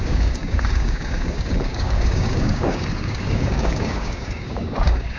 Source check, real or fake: fake